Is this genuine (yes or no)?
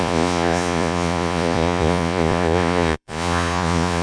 no